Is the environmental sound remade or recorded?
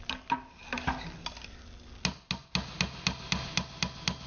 recorded